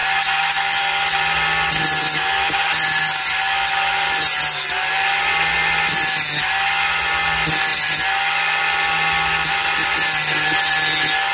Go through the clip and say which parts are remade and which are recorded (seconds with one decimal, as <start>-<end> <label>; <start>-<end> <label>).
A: 0.0-11.3 recorded